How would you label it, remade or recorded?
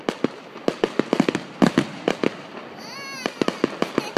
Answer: recorded